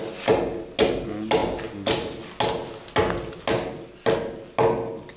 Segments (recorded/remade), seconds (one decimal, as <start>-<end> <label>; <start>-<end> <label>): 0.0-5.2 recorded